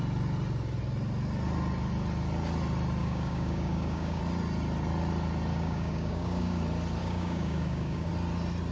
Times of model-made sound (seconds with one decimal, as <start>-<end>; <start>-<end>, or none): 3.0-4.2; 5.5-6.6; 7.0-8.1